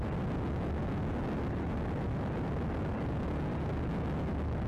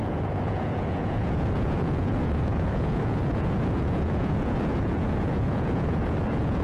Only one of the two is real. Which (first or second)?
first